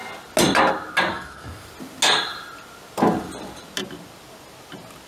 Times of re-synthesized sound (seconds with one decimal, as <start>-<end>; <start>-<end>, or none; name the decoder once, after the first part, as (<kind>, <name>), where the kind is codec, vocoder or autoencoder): 1.1-1.7 (codec, DAC)